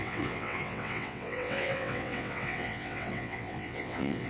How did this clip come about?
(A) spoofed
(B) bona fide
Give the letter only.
A